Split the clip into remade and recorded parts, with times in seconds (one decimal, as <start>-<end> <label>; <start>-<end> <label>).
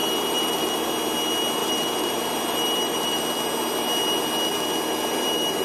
0.0-0.9 remade; 0.9-1.6 recorded; 1.6-3.2 remade; 3.2-5.6 recorded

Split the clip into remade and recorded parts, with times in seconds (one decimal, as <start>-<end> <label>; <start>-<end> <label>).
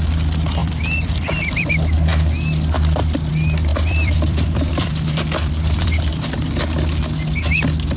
0.0-0.6 recorded; 0.6-1.7 remade; 1.7-3.7 recorded; 3.7-6.1 remade; 6.1-8.0 recorded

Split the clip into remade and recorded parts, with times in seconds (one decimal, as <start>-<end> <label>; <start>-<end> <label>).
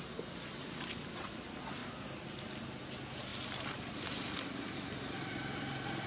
0.0-1.8 recorded; 1.8-2.4 remade; 2.4-3.3 recorded; 3.3-4.6 remade; 4.6-6.1 recorded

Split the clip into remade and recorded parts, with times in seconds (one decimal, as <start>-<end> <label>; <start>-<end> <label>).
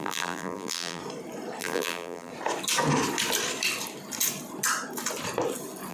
0.0-1.0 remade; 1.0-1.6 recorded; 1.6-2.3 remade; 2.3-5.9 recorded